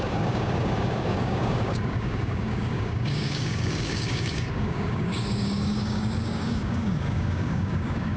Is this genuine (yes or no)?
no